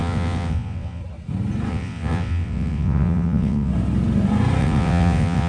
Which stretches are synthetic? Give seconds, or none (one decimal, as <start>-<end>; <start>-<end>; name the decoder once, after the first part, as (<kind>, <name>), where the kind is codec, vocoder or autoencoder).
0.0-1.0 (vocoder, WaveNeXt); 1.7-3.7; 4.6-5.5